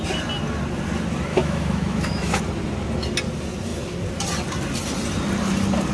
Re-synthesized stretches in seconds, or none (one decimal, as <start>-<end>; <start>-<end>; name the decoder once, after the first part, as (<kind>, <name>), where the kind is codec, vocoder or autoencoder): 1.3-2.4 (autoencoder, DAC-VAE)